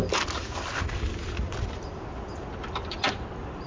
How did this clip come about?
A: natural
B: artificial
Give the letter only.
A